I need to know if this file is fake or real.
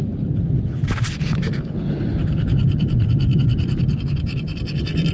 fake